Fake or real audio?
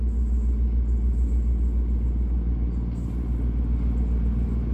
real